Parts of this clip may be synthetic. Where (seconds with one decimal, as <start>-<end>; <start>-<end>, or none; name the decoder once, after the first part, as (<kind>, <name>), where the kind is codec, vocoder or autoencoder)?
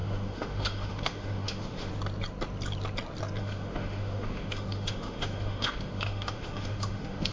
0.0-1.9 (autoencoder, DAC-VAE); 3.4-7.3